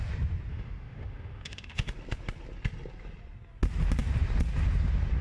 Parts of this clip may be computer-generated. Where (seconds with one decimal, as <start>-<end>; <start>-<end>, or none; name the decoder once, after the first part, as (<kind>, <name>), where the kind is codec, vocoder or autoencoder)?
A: 0.5-1.9 (autoencoder, DAC-VAE)